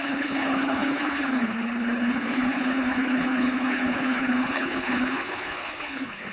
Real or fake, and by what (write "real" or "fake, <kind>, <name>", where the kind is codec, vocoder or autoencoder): fake, codec, HILCodec